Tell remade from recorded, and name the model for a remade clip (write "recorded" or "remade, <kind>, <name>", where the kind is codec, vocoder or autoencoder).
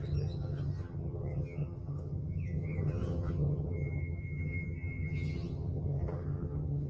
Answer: remade, vocoder, HiFi-GAN